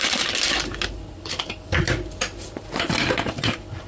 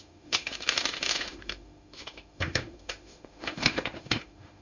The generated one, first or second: second